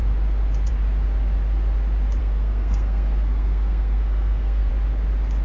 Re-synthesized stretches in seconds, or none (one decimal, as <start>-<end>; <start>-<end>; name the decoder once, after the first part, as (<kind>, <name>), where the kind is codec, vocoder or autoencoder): 2.2-4.7 (codec, SNAC)